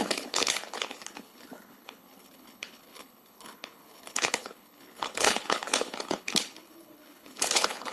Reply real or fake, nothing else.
fake